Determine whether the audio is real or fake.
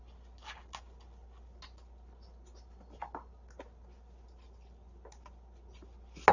real